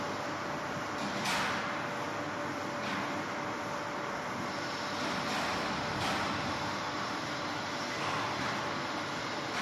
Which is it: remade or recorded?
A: recorded